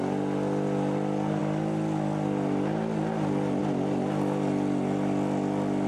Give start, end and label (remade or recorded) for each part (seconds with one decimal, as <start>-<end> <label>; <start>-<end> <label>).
0.0-5.9 recorded